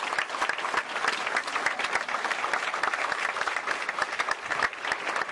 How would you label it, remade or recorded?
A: recorded